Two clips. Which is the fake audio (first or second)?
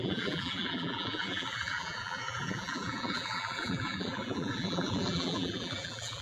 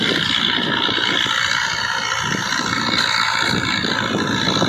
first